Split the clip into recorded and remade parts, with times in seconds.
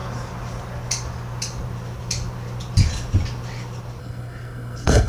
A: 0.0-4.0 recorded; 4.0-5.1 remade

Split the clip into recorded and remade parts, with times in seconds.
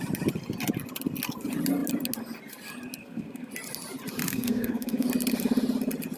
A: 0.0-3.0 recorded; 3.0-3.5 remade; 3.5-4.3 recorded; 4.3-5.1 remade; 5.1-6.2 recorded